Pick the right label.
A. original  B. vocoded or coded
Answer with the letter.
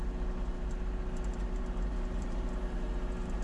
A